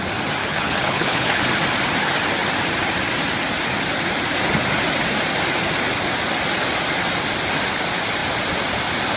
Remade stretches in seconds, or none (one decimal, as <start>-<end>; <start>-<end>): 0.4-1.4